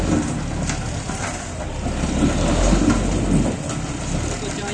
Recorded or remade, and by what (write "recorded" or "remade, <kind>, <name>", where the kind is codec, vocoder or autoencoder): recorded